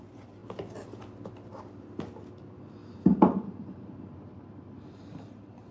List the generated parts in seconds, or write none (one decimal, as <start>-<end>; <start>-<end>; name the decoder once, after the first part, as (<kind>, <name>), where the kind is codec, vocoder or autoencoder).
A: 2.8-5.7 (vocoder, BigVGAN v2)